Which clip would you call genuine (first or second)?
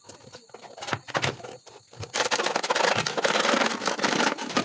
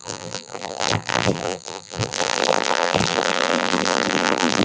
first